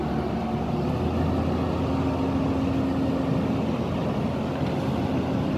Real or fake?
real